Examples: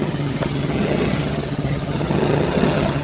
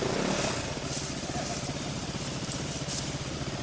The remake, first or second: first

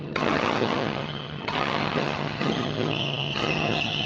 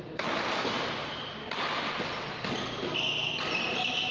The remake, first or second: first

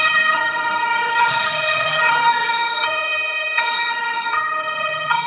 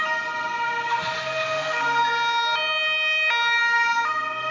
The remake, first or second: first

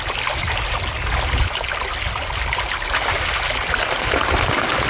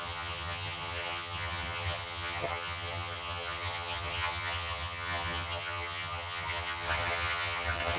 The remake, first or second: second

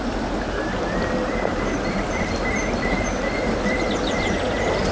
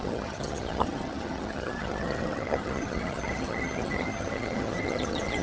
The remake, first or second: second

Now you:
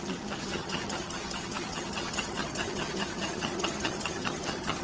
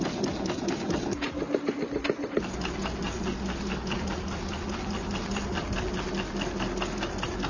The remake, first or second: first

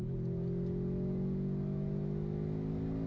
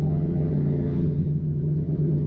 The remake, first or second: second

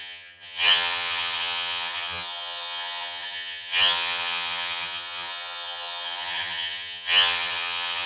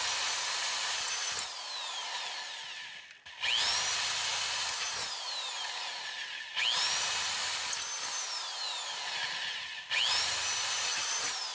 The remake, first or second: first